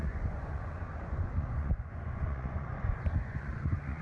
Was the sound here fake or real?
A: fake